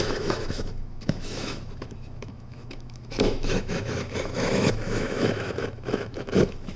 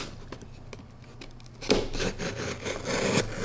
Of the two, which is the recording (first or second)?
second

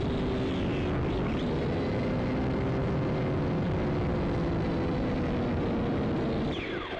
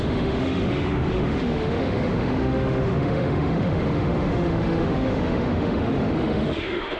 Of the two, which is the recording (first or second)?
first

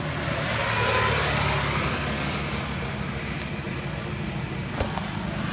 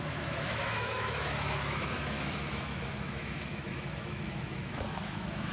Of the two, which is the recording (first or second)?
first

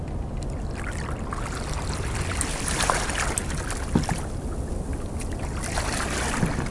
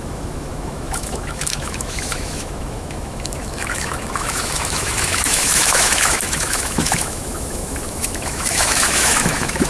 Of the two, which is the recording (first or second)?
first